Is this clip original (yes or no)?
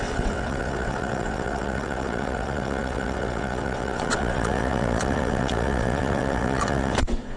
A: no